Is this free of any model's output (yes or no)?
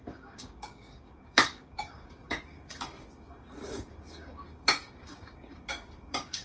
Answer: no